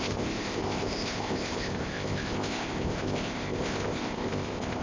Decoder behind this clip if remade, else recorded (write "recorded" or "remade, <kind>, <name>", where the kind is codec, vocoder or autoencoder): remade, codec, ZipCodec